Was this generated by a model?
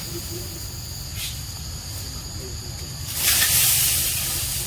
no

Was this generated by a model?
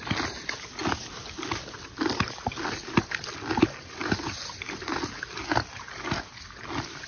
no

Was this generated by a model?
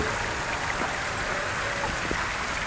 no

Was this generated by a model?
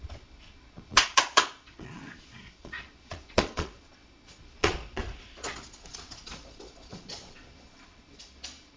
yes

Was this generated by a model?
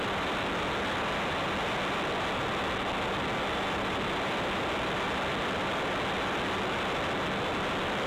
no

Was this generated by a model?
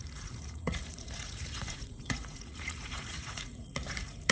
yes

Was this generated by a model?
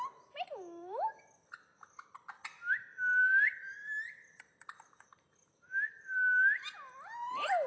no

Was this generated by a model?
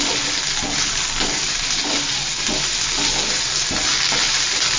no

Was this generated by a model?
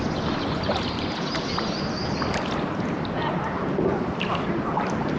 no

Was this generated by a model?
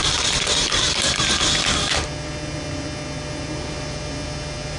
no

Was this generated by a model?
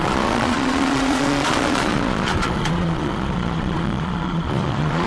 yes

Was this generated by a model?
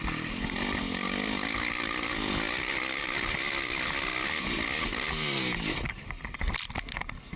no